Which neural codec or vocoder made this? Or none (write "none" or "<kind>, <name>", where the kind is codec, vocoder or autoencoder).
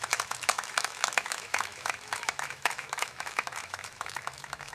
autoencoder, DAC-VAE